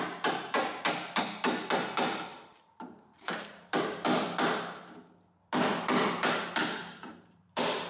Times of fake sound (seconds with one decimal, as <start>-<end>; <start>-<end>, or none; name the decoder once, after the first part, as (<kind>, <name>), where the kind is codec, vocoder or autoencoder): 2.3-3.8 (vocoder, BigVGAN v2); 6.8-7.9